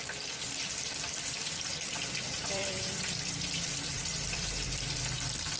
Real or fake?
fake